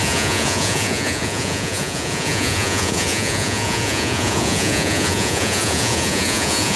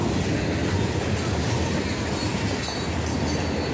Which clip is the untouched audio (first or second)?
second